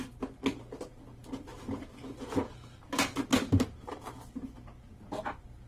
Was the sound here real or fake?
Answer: real